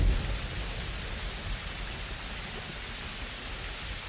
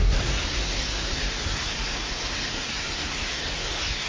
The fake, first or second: second